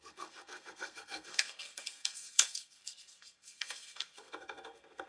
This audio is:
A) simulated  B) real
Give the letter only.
A